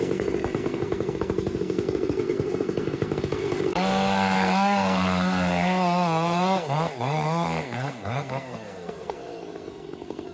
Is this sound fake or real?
fake